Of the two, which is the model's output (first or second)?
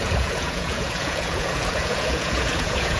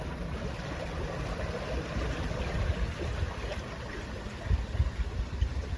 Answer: first